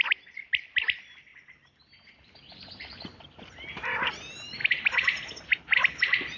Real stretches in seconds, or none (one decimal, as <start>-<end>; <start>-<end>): 0.0-6.4